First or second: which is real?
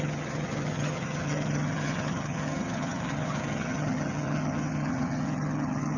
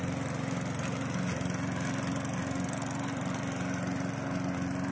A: second